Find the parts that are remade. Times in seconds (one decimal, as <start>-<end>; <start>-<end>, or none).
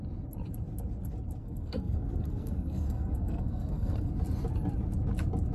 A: 1.4-4.1